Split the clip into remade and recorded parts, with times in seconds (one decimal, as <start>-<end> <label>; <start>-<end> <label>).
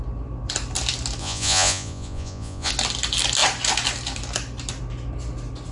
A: 0.0-1.2 recorded; 1.2-2.7 remade; 2.7-5.7 recorded